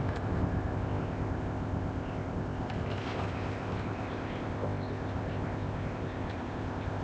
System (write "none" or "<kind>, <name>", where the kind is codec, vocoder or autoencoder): codec, ZipCodec